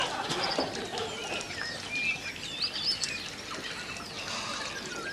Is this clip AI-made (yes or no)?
no